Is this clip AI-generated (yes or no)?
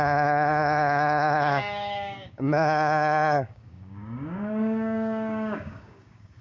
yes